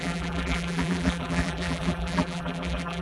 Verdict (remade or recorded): remade